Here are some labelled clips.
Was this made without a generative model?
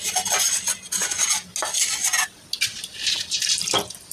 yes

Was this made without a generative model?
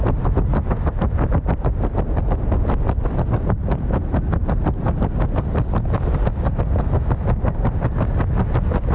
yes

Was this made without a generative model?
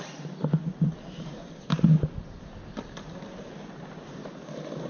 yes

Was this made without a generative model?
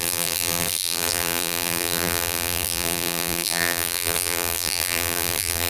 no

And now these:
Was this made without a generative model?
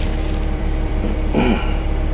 no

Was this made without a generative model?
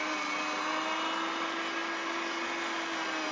yes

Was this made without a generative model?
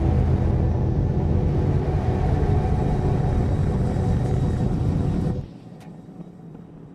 yes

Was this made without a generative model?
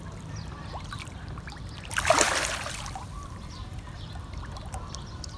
no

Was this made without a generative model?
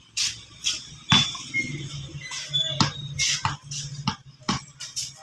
yes